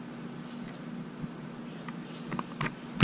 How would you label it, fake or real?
real